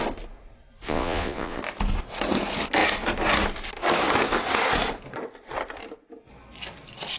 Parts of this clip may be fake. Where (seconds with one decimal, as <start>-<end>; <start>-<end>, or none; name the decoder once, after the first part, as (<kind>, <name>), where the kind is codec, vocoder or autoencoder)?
0.8-1.6 (vocoder, Vocos)